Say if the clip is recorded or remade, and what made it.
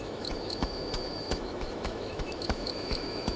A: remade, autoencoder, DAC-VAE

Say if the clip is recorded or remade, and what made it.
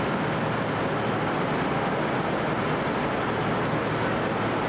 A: recorded